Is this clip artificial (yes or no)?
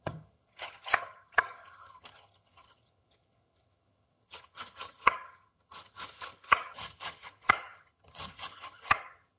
yes